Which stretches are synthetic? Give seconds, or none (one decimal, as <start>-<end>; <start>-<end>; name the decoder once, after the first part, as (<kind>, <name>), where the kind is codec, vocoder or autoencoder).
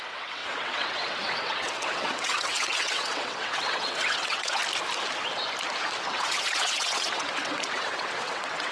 0.0-4.6 (vocoder, WaveNeXt); 6.1-8.7